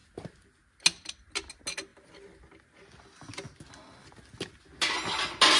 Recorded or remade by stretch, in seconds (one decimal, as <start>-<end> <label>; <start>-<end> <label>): 0.0-5.6 recorded